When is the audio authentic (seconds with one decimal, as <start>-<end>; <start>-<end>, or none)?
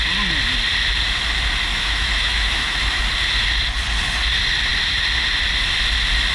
0.0-1.7; 3.0-6.3